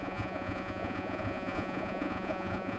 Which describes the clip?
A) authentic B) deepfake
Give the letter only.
B